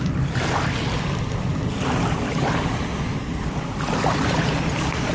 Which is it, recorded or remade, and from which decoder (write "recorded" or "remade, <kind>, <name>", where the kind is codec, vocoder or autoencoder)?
recorded